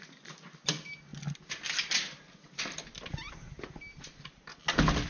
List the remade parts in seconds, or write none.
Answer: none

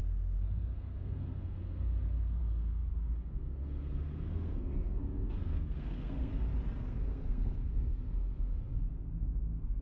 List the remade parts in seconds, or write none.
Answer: 0.0-6.3 (codec, SNAC); 6.8-9.8

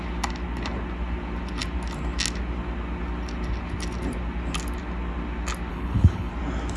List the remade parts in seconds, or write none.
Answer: 5.7-6.3 (codec, HILCodec)

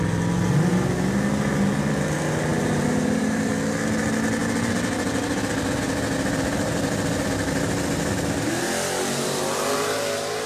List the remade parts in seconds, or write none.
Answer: 2.5-3.5 (vocoder, BigVGAN v2)

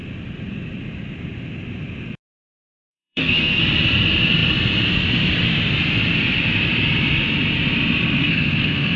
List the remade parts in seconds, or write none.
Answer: 2.9-3.6 (codec, SNAC); 8.2-9.0

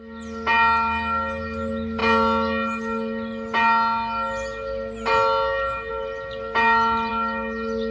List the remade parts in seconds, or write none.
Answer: none

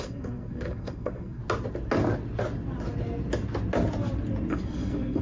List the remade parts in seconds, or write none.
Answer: 0.0-1.4 (codec, SNAC); 4.5-5.2

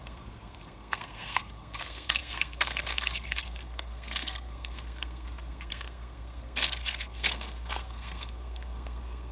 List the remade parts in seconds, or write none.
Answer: 0.0-9.3 (codec, SNAC)